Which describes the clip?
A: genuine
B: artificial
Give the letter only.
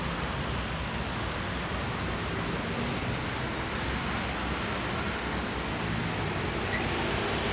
A